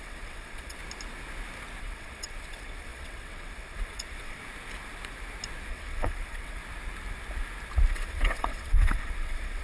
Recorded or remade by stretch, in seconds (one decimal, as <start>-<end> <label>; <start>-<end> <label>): 0.0-0.8 remade; 0.8-1.8 recorded; 1.8-4.4 remade; 4.4-5.7 recorded; 5.7-6.6 remade; 6.6-7.9 recorded; 7.9-9.6 remade

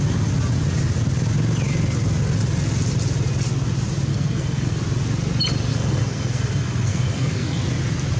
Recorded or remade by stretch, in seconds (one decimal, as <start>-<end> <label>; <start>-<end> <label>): 0.0-4.1 recorded; 4.1-4.8 remade; 4.8-5.7 recorded; 5.7-7.6 remade; 7.6-8.2 recorded

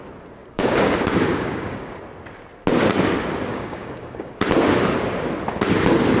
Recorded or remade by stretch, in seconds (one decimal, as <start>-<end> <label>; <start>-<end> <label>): 0.0-0.4 recorded; 0.4-2.0 remade; 2.0-3.5 recorded; 3.5-4.3 remade; 4.3-6.2 recorded

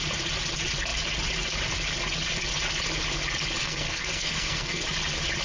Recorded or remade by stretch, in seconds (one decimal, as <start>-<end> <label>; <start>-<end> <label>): 0.0-3.6 recorded; 3.6-4.8 remade; 4.8-5.4 recorded

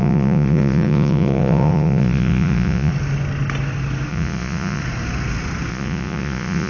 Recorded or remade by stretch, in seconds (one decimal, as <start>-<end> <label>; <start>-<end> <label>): 0.0-2.9 remade; 2.9-4.1 recorded; 4.1-4.8 remade; 4.8-5.7 recorded; 5.7-6.7 remade

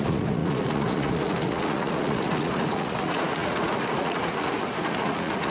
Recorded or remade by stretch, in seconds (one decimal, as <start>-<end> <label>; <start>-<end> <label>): 0.0-5.5 remade

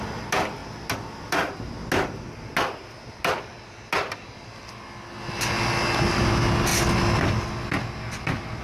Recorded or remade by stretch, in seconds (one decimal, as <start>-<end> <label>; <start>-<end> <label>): 0.0-8.6 recorded